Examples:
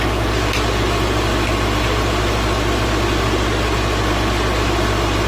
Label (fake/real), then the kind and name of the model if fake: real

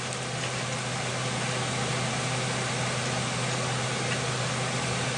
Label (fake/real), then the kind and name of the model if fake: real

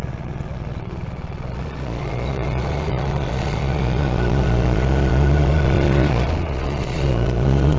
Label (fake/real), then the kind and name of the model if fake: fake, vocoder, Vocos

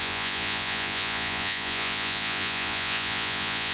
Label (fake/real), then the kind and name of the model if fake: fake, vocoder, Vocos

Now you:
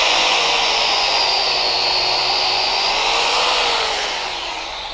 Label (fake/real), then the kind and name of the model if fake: fake, vocoder, Vocos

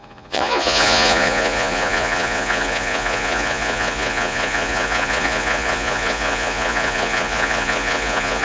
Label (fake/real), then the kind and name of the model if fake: fake, vocoder, Vocos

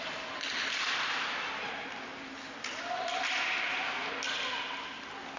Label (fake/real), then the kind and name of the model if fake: real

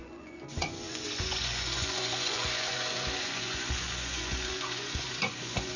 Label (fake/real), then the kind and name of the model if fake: fake, vocoder, Vocos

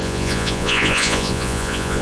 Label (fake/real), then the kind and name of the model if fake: fake, vocoder, Vocos